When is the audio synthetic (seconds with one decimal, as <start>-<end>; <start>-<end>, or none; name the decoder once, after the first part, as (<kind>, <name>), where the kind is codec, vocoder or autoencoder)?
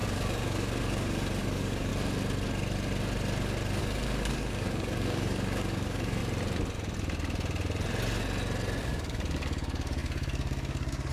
0.0-1.9 (codec, DAC); 3.8-6.2; 8.8-11.1